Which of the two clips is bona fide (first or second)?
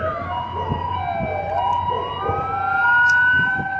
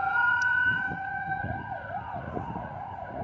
first